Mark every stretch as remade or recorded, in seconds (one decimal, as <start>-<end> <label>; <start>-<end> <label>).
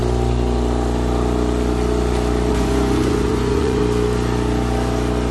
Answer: 0.0-2.5 recorded; 2.5-3.8 remade; 3.8-5.3 recorded